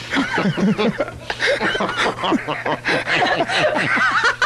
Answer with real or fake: real